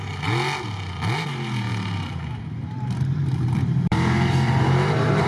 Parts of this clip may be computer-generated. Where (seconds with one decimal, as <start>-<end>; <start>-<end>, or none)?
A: 1.7-5.3